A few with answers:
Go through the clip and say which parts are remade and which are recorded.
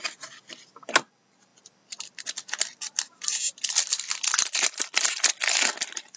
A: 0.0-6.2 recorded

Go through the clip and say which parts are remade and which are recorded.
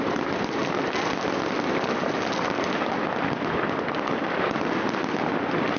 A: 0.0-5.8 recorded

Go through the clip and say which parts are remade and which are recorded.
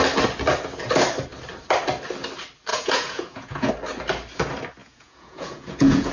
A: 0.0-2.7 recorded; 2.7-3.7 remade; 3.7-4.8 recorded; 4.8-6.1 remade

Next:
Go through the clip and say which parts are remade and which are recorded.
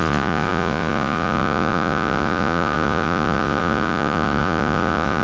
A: 0.0-5.2 remade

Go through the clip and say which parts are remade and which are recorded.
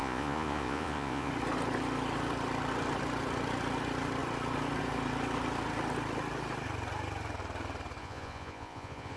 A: 0.0-1.3 remade; 1.3-8.0 recorded; 8.0-9.2 remade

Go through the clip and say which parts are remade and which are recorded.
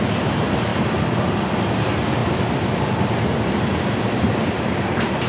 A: 0.0-5.3 recorded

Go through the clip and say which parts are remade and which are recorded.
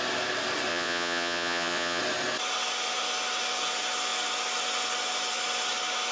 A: 0.0-0.7 recorded; 0.7-2.0 remade; 2.0-6.1 recorded